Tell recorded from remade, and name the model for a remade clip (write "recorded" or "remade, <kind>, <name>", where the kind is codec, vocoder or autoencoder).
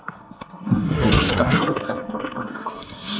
remade, codec, SNAC